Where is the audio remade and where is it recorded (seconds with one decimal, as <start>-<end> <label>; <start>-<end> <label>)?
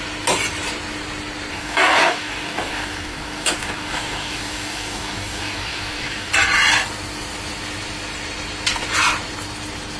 0.0-1.5 recorded; 1.5-6.3 remade; 6.3-10.0 recorded